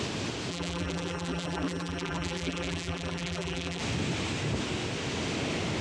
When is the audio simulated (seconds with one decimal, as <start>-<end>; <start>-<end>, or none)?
0.5-3.8